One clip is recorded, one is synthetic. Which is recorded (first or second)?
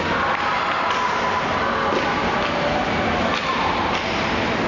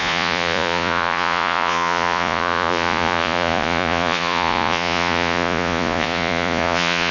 first